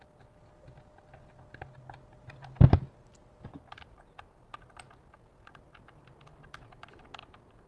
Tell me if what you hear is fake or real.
real